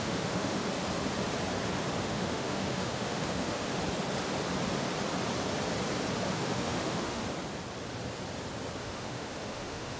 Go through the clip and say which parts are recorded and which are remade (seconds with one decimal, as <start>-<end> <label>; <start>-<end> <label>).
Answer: 0.0-0.6 remade; 0.6-2.0 recorded; 2.0-3.7 remade; 3.7-6.3 recorded; 6.3-7.2 remade; 7.2-8.8 recorded; 8.8-10.0 remade